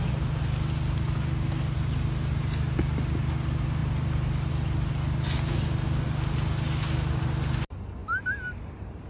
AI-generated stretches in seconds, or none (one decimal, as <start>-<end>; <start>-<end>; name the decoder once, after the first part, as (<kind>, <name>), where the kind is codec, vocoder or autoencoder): none